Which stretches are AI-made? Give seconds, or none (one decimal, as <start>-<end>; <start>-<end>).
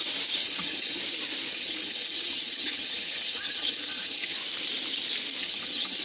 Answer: 0.4-1.0; 1.5-4.4; 5.4-6.0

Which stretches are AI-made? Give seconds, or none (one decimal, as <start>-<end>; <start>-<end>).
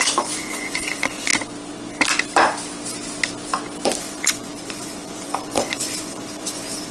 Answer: 0.0-1.3; 4.0-6.9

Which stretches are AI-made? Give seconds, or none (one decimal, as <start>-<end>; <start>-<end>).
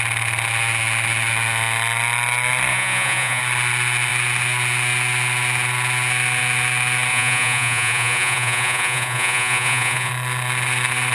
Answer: 2.7-3.4; 7.1-10.1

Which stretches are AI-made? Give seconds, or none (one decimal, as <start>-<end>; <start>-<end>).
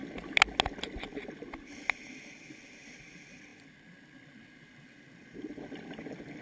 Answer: none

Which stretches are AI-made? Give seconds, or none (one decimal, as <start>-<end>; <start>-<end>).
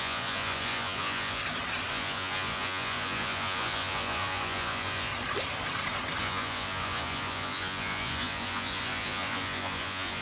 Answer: 0.0-1.4; 1.9-5.1; 6.2-10.2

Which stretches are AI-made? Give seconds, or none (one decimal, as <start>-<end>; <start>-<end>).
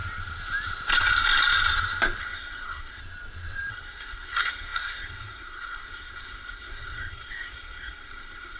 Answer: 2.2-3.0; 3.7-8.6